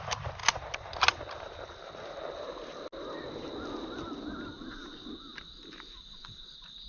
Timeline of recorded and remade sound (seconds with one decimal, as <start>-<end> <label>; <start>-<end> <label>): 0.0-6.9 recorded